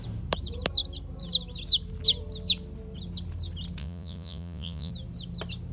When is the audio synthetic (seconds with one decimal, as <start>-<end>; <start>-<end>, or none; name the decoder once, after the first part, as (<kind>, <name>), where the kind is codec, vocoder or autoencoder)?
3.8-4.9 (vocoder, Vocos)